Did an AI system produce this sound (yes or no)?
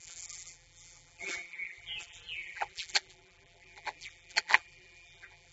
yes